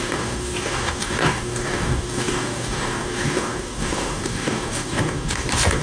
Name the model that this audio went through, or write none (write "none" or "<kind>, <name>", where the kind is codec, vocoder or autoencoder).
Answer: codec, DAC